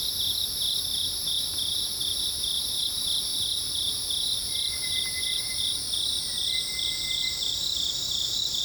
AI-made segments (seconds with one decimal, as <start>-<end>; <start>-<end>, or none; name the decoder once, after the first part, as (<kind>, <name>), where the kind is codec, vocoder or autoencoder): none